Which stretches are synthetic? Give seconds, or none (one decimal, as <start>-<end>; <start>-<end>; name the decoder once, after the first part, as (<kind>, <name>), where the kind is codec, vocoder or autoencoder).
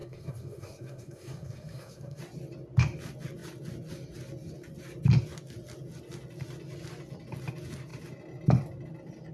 0.0-2.2 (codec, SNAC)